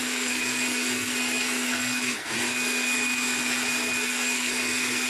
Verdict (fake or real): fake